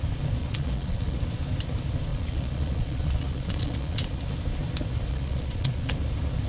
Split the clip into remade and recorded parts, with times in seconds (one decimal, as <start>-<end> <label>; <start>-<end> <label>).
0.0-0.4 recorded; 0.4-1.2 remade; 1.2-2.1 recorded; 2.1-4.2 remade; 4.2-5.1 recorded; 5.1-5.9 remade; 5.9-6.5 recorded